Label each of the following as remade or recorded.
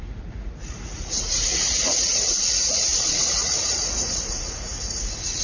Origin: remade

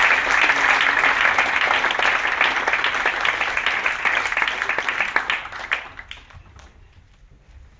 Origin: recorded